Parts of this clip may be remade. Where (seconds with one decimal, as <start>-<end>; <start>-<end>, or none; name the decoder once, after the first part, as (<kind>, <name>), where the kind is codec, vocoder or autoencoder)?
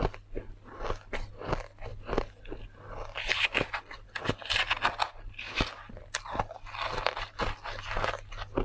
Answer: none